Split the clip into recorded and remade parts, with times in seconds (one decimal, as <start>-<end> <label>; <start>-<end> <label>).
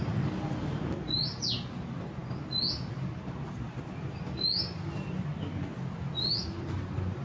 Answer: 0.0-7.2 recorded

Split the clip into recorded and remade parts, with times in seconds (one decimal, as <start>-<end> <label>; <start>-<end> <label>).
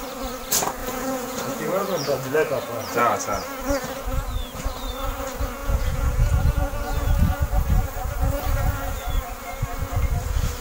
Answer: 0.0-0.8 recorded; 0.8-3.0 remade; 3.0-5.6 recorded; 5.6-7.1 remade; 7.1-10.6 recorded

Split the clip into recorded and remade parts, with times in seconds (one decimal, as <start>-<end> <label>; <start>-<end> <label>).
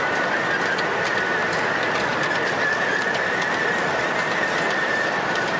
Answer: 0.0-5.6 recorded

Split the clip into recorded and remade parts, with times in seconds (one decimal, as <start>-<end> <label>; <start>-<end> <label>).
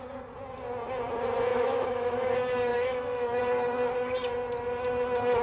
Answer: 0.0-1.5 recorded; 1.5-2.3 remade; 2.3-2.7 recorded; 2.7-3.4 remade; 3.4-5.4 recorded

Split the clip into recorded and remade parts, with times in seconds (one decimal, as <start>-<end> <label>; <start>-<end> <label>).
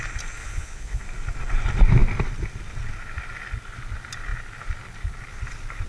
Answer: 0.0-0.4 recorded; 0.4-1.0 remade; 1.0-5.9 recorded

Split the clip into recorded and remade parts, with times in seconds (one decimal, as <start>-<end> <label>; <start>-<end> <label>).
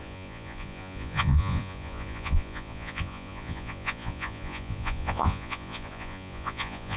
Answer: 0.0-7.0 remade